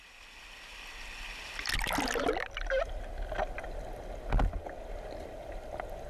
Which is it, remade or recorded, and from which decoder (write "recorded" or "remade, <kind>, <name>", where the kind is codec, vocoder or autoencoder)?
recorded